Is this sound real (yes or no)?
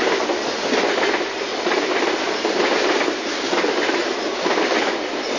yes